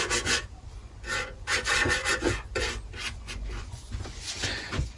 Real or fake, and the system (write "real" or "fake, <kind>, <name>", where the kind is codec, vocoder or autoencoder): fake, vocoder, Vocos